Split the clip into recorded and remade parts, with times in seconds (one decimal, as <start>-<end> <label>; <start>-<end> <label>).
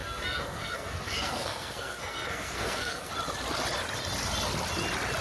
0.0-3.1 remade; 3.1-5.2 recorded